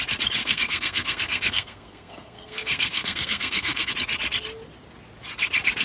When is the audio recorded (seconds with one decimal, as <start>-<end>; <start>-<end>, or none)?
0.0-0.4; 3.9-5.8